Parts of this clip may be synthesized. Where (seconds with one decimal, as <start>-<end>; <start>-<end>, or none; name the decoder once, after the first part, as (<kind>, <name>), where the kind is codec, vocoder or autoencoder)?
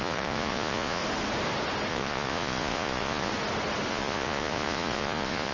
0.0-1.0 (vocoder, Vocos); 1.9-3.3; 3.9-5.5